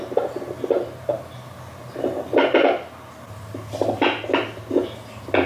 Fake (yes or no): no